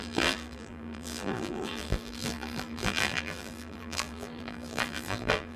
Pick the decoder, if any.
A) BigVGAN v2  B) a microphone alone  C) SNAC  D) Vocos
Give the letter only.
A